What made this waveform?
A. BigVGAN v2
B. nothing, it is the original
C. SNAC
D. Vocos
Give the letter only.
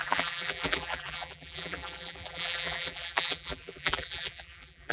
A